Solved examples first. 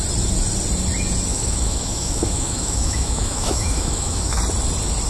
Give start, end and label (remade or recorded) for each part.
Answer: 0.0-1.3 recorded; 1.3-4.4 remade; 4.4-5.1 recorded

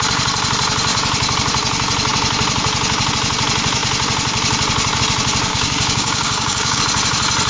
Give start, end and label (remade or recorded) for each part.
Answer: 0.0-5.5 recorded; 5.5-6.8 remade; 6.8-7.5 recorded

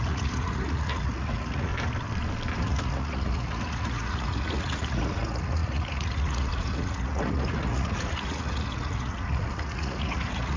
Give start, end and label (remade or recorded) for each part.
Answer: 0.0-1.7 remade; 1.7-2.6 recorded; 2.6-10.6 remade

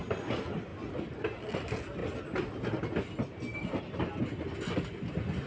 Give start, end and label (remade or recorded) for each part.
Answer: 0.0-5.5 recorded

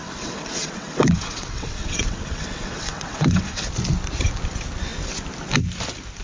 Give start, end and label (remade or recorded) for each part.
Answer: 0.0-3.7 remade; 3.7-6.2 recorded

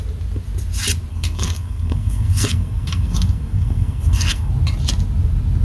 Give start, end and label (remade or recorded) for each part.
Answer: 0.0-1.1 recorded; 1.1-4.5 remade; 4.5-5.6 recorded